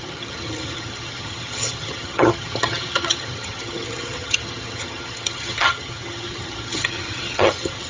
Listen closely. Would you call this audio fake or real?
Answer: fake